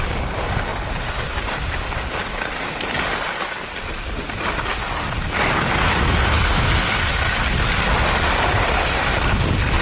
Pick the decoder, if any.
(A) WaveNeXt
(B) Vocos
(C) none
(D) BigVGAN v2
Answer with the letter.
C